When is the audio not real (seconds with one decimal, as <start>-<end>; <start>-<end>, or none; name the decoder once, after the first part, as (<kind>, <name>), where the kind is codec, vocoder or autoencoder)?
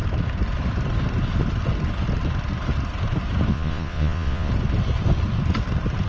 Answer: 3.5-4.5 (vocoder, Vocos)